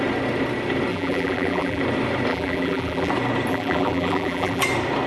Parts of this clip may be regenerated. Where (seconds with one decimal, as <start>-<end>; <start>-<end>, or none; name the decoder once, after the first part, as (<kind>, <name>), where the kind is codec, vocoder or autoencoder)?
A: 0.9-1.8 (vocoder, BigVGAN v2); 2.3-3.1; 3.5-4.6